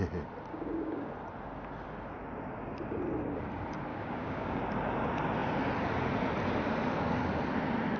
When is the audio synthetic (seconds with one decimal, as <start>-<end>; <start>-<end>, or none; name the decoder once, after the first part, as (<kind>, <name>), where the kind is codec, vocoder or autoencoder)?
0.5-1.1 (codec, DAC); 3.9-4.6

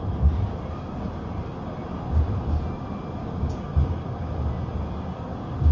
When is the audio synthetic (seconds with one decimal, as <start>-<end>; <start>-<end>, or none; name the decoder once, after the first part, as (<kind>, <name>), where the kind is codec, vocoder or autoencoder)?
3.2-4.3 (codec, DAC)

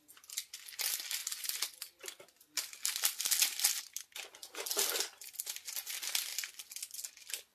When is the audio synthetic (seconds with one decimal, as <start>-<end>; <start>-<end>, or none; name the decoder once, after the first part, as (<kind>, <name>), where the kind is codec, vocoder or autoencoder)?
none

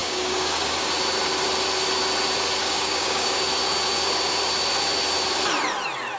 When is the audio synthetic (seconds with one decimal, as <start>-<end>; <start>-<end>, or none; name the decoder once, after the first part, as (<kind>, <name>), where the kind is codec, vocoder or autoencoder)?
0.0-0.9 (codec, DAC); 2.6-3.4

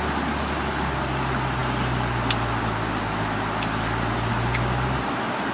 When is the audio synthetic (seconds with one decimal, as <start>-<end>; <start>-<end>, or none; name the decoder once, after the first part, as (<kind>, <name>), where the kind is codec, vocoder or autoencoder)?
none

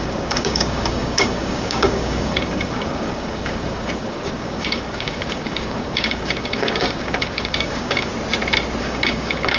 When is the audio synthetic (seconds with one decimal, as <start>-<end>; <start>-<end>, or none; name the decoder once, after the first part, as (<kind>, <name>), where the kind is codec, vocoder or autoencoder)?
0.0-8.1 (codec, DAC); 8.8-9.6

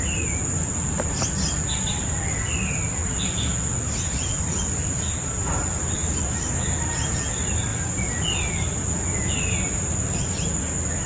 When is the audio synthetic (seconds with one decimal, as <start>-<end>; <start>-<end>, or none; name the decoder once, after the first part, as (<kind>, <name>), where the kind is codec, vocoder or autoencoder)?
none

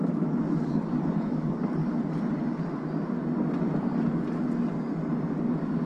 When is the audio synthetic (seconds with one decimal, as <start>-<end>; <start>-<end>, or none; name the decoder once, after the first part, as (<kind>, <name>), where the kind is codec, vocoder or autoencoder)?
0.0-1.8 (codec, DAC); 5.3-5.9